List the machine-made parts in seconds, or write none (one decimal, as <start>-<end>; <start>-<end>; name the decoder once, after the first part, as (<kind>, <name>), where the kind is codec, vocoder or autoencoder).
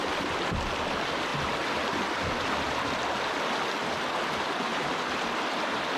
4.7-5.4 (vocoder, BigVGAN v2)